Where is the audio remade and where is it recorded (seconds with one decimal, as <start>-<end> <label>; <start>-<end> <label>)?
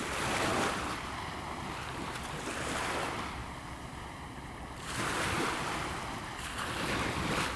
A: 0.0-7.6 recorded